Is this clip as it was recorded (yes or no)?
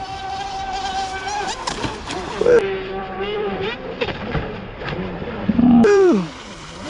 no